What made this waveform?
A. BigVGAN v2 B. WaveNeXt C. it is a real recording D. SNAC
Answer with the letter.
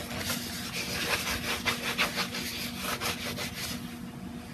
C